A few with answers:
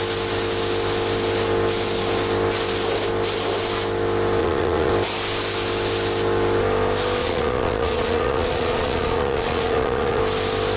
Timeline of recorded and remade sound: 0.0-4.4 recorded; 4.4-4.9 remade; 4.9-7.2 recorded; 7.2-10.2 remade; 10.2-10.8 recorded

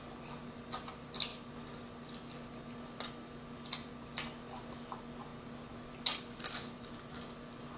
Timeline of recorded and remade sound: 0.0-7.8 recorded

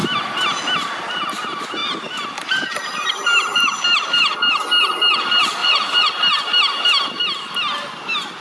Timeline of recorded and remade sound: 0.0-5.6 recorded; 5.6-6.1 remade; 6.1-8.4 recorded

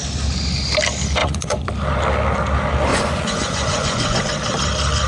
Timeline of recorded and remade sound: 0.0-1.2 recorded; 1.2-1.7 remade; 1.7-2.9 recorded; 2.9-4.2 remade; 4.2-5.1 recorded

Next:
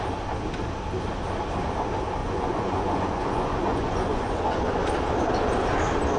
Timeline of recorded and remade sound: 0.0-2.2 recorded; 2.2-4.7 remade; 4.7-6.2 recorded

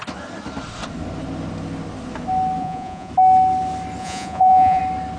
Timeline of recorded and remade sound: 0.0-2.6 recorded; 2.6-3.1 remade; 3.1-4.0 recorded; 4.0-4.8 remade; 4.8-5.2 recorded

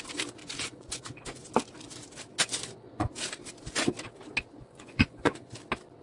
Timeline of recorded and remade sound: 0.0-0.4 recorded; 0.4-1.5 remade; 1.5-2.4 recorded; 2.4-3.1 remade; 3.1-4.6 recorded; 4.6-5.5 remade; 5.5-6.0 recorded

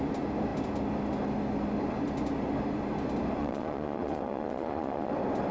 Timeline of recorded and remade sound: 0.0-3.4 recorded; 3.4-5.1 remade; 5.1-5.5 recorded